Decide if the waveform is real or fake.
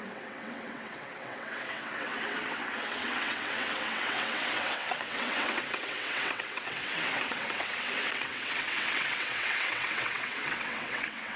fake